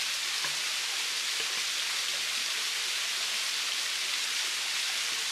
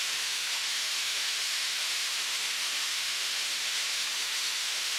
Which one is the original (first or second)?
first